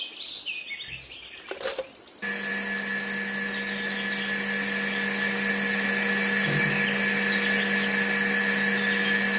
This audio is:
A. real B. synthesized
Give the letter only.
A